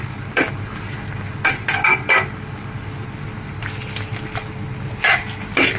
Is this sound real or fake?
real